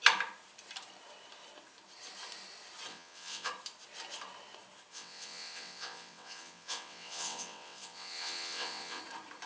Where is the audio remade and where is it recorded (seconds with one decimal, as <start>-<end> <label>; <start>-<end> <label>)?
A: 0.0-2.9 recorded; 2.9-3.5 remade; 3.5-4.9 recorded; 4.9-9.0 remade; 9.0-9.5 recorded